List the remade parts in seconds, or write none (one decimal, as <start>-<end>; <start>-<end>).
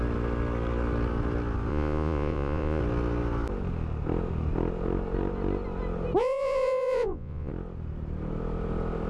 1.7-2.8; 6.2-7.5